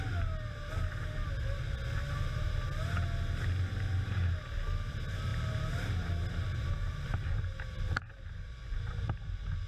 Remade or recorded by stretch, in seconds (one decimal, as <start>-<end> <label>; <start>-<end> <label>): 0.0-9.7 recorded